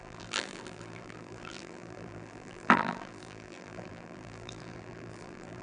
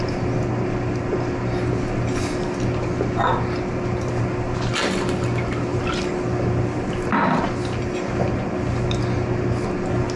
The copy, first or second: first